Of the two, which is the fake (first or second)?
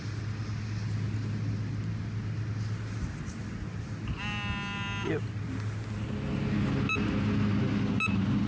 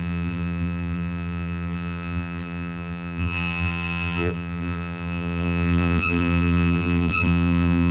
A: second